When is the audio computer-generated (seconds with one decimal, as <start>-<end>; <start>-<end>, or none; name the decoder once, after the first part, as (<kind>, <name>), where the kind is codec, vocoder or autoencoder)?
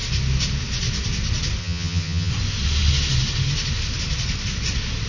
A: 1.6-2.3 (vocoder, HiFi-GAN)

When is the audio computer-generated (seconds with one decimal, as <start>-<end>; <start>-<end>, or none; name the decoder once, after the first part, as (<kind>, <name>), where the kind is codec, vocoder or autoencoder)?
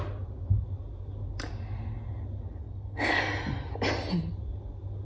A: 2.6-3.3 (codec, SNAC)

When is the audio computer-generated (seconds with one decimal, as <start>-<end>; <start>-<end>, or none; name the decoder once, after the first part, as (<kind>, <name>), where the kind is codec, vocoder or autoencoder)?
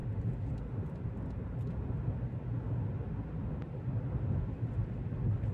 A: none